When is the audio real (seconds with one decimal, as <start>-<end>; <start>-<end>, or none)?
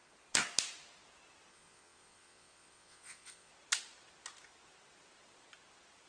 0.0-1.5; 3.5-6.1